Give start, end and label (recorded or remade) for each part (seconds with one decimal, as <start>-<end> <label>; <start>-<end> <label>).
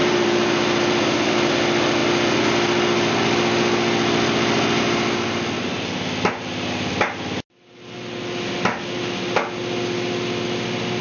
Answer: 0.0-1.5 remade; 1.5-11.0 recorded